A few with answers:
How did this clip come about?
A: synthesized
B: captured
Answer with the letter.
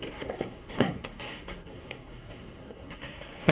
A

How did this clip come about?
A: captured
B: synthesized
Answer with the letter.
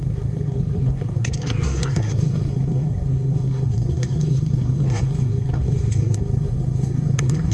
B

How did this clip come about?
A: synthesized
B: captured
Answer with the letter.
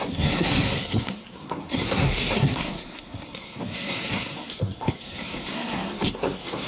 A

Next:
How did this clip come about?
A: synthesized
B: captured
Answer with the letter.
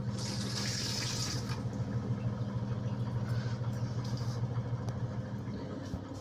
B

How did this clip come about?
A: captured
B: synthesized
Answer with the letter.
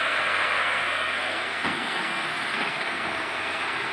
B